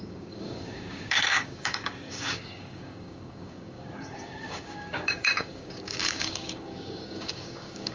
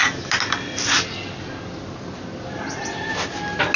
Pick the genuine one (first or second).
second